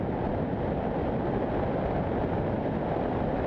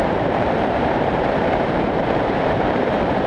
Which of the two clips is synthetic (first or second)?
second